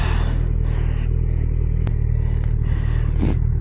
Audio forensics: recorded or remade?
recorded